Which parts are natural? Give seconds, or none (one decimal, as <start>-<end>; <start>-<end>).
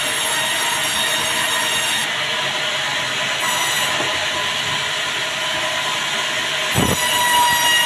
0.0-7.9